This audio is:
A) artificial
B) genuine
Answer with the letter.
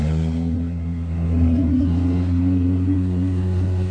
A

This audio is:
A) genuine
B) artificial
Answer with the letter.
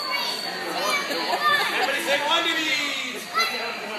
A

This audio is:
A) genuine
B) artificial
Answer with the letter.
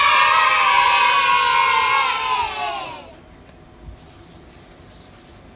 A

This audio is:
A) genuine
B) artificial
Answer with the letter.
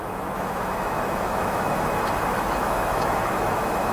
B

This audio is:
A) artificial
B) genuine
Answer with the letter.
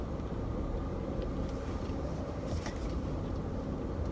B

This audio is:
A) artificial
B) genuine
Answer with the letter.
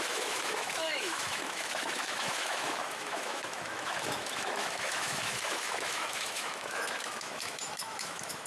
A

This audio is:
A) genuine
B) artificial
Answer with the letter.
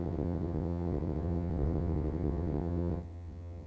B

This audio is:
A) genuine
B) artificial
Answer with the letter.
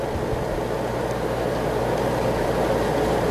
A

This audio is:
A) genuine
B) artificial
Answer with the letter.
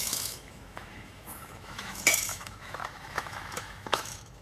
B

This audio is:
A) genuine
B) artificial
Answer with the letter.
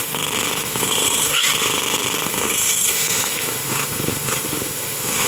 B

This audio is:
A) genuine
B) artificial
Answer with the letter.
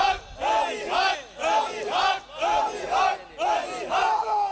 A